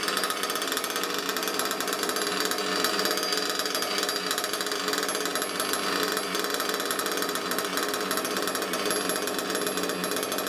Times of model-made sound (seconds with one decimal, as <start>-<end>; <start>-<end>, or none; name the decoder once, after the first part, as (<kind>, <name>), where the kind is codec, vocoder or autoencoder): none